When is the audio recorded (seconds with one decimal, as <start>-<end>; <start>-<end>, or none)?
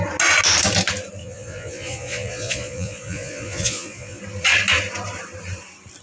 0.0-1.2; 4.2-6.0